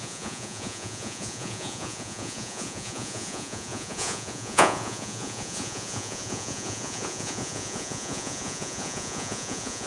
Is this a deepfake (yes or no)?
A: yes